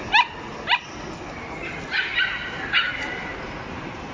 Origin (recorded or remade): recorded